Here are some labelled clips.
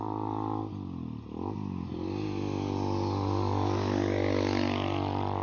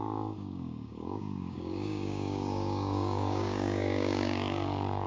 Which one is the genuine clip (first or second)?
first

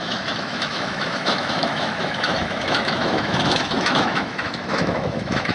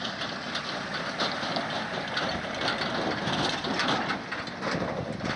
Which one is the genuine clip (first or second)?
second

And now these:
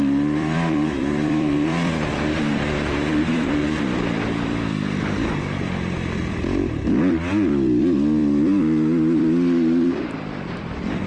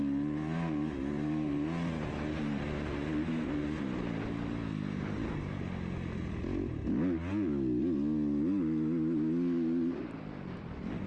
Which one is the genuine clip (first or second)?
second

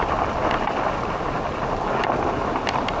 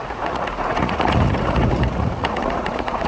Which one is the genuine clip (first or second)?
first